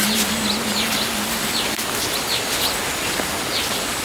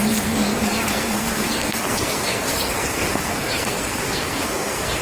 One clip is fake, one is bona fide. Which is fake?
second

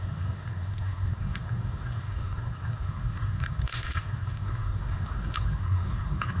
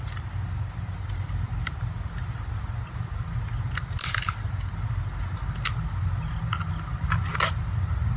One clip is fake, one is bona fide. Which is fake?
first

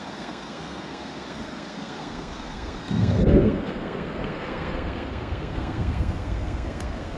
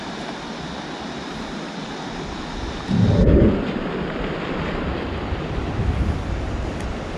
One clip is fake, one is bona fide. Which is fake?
first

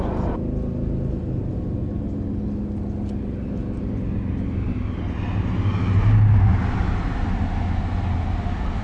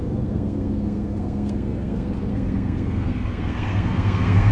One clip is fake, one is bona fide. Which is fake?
second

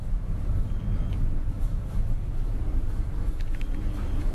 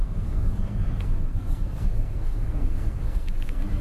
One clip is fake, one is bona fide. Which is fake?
second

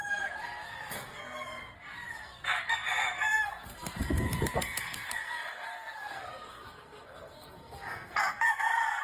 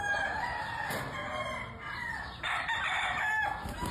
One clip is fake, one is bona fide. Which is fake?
first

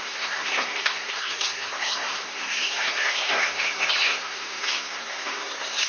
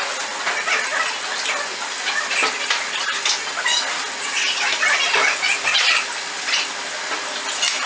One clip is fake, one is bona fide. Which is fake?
first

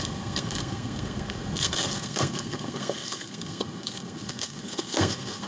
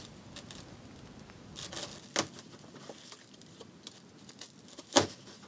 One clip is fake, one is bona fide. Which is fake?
first